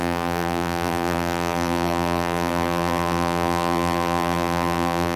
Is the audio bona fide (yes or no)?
no